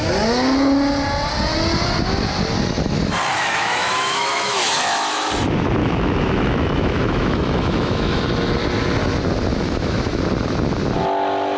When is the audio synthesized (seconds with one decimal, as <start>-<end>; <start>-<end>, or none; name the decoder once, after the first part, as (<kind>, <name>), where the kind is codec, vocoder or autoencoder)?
3.3-5.3 (autoencoder, DAC-VAE); 5.8-8.2; 9.5-10.2